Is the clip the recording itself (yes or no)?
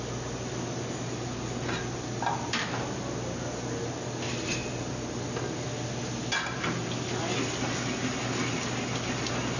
yes